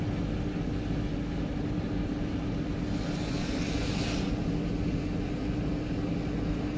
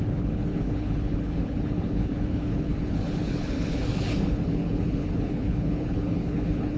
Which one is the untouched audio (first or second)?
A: first